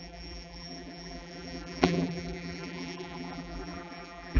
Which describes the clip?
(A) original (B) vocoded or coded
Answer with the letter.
B